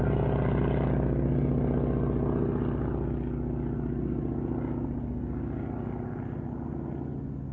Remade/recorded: recorded